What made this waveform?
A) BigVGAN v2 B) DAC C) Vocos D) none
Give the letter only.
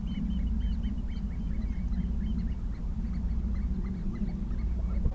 D